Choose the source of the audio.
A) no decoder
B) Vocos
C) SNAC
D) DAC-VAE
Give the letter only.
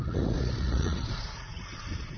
B